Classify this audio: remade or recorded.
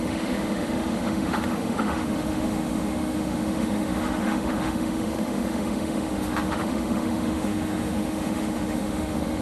remade